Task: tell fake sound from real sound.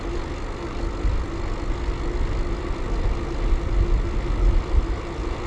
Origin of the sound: real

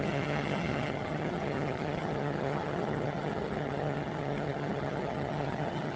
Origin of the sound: fake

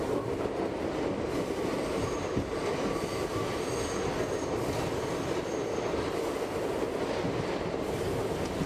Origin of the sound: real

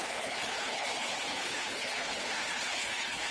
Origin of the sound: fake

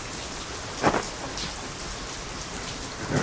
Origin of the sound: real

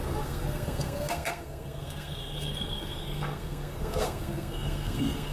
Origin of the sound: fake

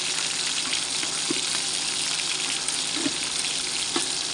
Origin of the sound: real